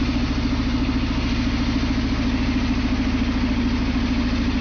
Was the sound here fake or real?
real